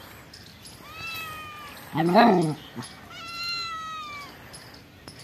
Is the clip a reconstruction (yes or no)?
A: no